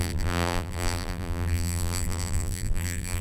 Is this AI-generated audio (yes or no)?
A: yes